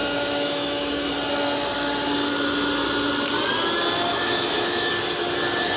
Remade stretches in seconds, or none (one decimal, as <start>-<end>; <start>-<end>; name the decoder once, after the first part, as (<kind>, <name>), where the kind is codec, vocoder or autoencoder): 0.0-1.1 (autoencoder, DAC-VAE); 4.1-4.9